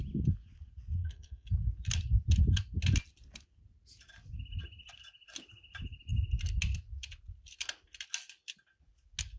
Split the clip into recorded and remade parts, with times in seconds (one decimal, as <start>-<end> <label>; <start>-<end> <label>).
0.0-1.0 recorded; 1.0-1.5 remade; 1.5-9.4 recorded